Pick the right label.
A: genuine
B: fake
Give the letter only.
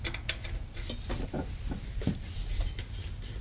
A